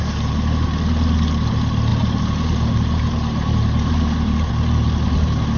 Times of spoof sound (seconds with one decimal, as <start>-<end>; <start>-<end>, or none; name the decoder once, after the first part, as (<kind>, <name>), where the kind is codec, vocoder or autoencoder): 1.9-4.5 (vocoder, BigVGAN v2)